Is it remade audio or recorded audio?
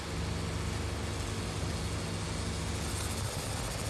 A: recorded